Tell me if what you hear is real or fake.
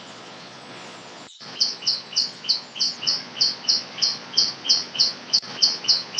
fake